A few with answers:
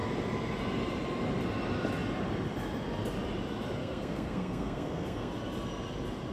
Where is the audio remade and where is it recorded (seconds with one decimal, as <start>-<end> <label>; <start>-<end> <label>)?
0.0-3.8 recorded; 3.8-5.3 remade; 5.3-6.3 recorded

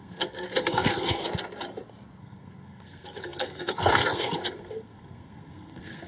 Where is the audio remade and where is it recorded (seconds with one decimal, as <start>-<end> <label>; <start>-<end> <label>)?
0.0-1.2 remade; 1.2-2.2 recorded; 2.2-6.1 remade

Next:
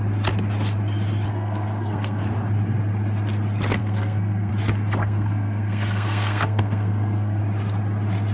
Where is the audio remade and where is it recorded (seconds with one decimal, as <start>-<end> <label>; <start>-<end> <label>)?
0.0-1.3 recorded; 1.3-2.2 remade; 2.2-3.8 recorded; 3.8-4.5 remade; 4.5-5.0 recorded; 5.0-7.4 remade; 7.4-8.3 recorded